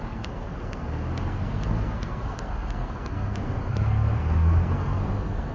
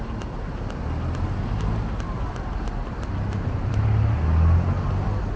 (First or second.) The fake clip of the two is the first